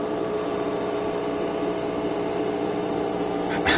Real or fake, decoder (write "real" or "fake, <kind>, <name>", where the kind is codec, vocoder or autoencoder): fake, vocoder, BigVGAN v2